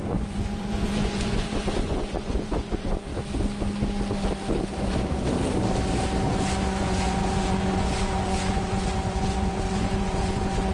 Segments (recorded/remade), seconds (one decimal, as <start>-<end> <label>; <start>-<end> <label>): 0.0-3.1 remade; 3.1-6.8 recorded; 6.8-10.7 remade